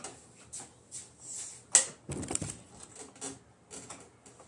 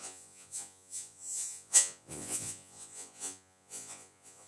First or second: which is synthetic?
second